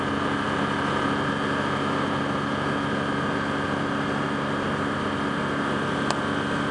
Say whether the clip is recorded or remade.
recorded